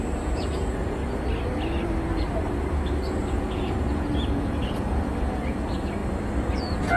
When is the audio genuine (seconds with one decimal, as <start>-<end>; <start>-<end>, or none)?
1.0-3.4; 6.0-6.6